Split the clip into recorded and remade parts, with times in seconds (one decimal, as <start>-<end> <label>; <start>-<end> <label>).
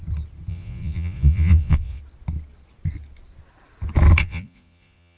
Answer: 0.0-0.5 recorded; 0.5-2.0 remade; 2.0-4.2 recorded; 4.2-5.2 remade